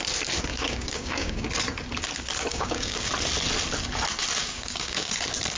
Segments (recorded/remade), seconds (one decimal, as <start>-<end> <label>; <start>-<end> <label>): 0.0-0.5 recorded; 0.5-1.5 remade; 1.5-2.5 recorded; 2.5-3.1 remade; 3.1-4.4 recorded; 4.4-5.1 remade; 5.1-5.6 recorded